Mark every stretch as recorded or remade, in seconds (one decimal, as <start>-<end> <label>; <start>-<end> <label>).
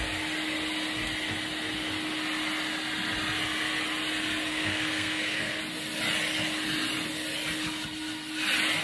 0.0-4.5 recorded; 4.5-5.6 remade; 5.6-8.8 recorded